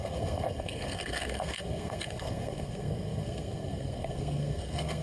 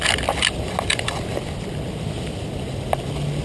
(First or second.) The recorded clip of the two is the second